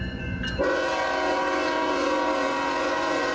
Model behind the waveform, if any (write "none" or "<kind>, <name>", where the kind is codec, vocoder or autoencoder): vocoder, Vocos